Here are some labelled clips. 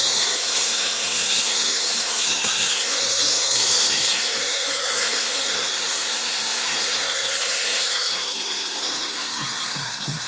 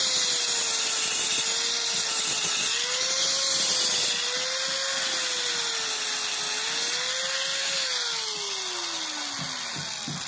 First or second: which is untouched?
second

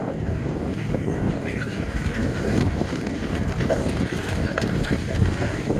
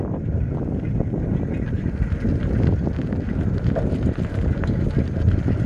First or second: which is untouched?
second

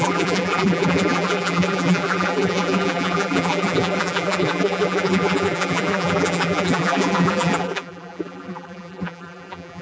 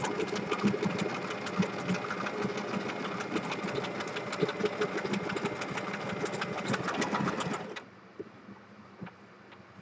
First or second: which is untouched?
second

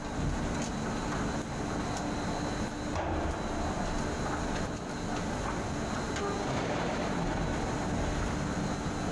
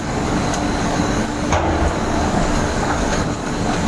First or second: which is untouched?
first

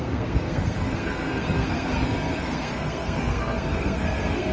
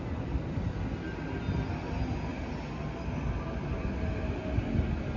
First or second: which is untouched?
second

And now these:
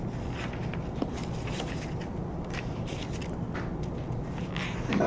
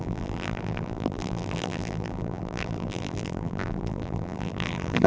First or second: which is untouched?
first